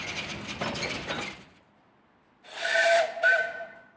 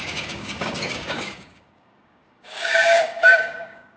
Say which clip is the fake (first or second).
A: second